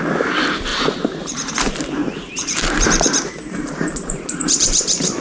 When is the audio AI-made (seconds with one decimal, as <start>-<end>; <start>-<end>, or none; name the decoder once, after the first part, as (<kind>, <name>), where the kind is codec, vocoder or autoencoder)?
0.7-1.5 (vocoder, BigVGAN v2); 2.0-5.2